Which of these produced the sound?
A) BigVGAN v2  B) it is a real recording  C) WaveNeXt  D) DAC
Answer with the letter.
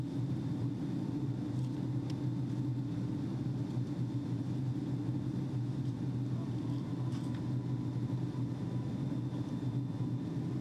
B